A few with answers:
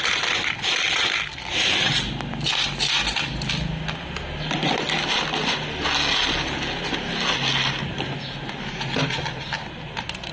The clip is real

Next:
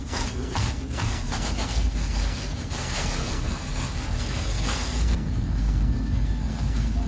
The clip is fake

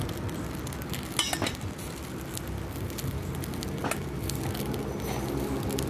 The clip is real